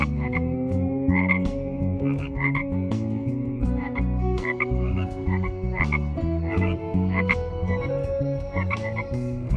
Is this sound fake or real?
fake